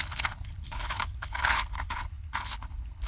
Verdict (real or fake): fake